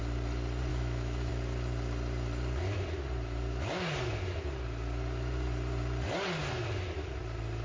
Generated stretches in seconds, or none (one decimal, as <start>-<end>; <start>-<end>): 0.7-1.3